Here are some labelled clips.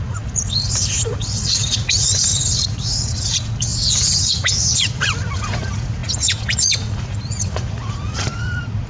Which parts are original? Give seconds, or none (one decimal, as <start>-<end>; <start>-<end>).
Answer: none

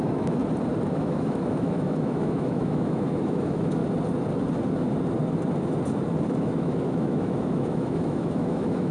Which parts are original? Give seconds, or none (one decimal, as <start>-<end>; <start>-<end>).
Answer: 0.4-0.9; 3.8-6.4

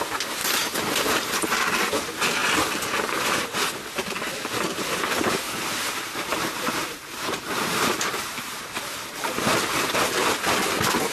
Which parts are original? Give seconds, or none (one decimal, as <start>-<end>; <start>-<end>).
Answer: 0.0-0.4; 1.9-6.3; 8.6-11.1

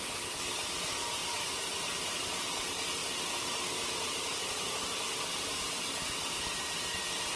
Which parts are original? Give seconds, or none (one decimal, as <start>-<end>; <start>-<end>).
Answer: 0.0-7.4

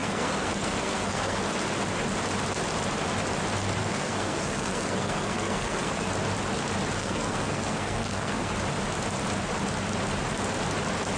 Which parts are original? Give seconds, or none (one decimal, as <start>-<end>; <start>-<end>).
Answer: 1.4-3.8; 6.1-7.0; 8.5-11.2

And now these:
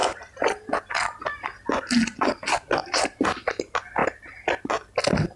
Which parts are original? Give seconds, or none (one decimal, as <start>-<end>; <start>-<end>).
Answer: 0.9-2.8; 3.5-5.4